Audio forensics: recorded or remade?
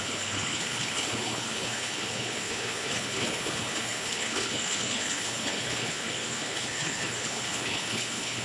remade